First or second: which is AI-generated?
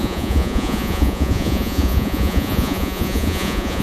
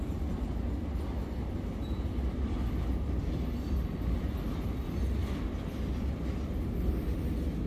first